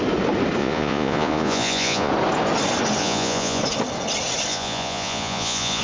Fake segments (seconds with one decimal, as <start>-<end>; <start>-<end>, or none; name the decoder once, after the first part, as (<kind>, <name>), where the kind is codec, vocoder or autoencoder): 0.6-2.1 (vocoder, Vocos); 3.0-3.6; 4.5-5.8